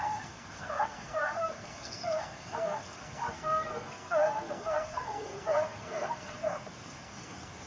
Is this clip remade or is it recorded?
remade